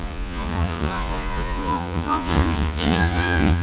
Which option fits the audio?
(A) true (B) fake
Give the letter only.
B